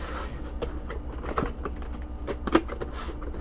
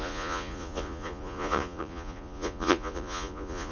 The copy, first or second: second